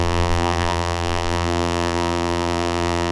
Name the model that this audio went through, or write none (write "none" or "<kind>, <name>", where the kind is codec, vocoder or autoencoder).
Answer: vocoder, BigVGAN v2